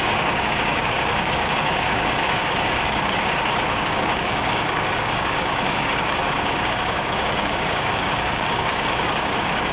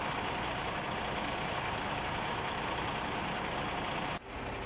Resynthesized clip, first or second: first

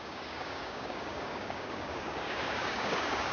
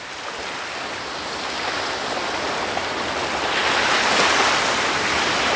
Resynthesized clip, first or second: first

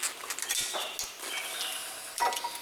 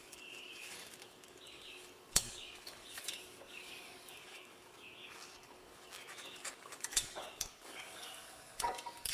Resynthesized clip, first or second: second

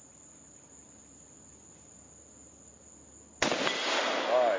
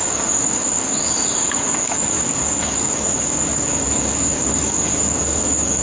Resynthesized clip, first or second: second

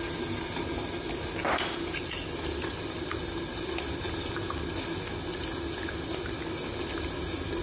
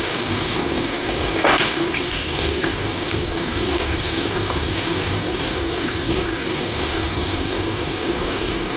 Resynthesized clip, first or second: second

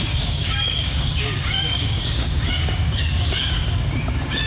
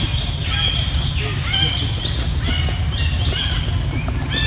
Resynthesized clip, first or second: first